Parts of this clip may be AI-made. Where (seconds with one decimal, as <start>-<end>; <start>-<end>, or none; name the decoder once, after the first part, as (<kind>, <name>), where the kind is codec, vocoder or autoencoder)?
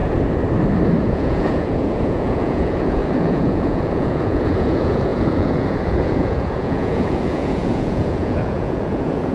1.0-9.3 (vocoder, Vocos)